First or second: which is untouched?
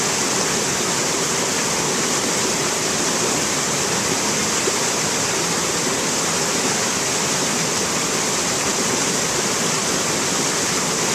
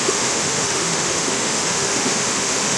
first